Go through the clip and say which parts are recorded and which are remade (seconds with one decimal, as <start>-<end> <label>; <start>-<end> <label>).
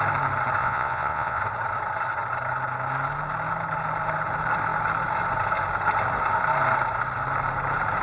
0.0-0.6 recorded; 0.6-1.4 remade; 1.4-8.0 recorded